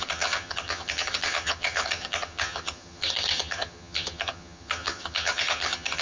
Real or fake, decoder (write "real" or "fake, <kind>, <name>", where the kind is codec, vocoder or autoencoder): fake, vocoder, HiFi-GAN